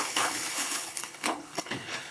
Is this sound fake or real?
fake